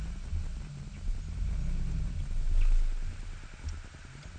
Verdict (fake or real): real